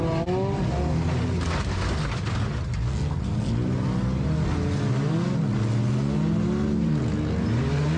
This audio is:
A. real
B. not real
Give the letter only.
A